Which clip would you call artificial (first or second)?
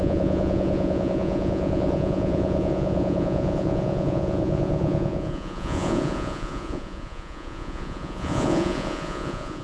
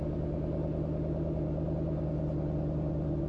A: first